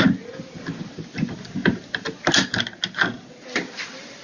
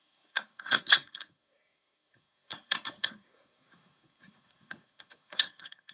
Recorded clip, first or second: first